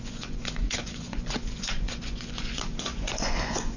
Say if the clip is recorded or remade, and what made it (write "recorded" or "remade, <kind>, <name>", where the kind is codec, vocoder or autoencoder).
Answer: remade, vocoder, Vocos